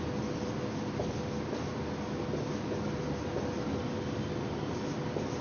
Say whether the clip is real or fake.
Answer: real